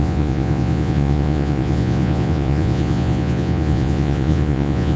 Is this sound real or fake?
fake